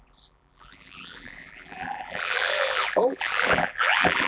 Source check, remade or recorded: remade